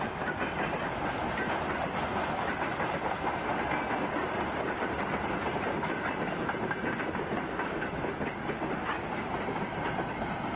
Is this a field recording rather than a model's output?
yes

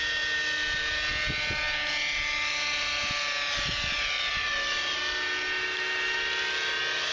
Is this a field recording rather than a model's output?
yes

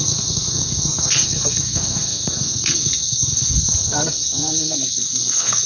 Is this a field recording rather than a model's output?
no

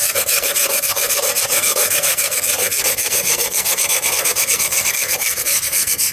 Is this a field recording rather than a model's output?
no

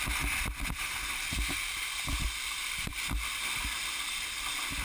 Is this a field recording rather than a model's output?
yes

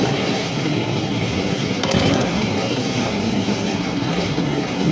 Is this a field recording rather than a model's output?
no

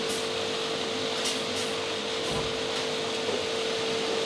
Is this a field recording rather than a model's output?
yes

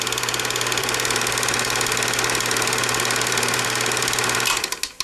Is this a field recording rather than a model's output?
yes